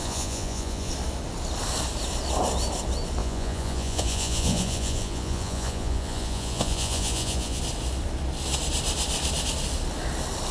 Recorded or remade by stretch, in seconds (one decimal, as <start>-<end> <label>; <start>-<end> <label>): 0.0-0.9 remade; 0.9-3.2 recorded; 3.2-7.6 remade; 7.6-10.5 recorded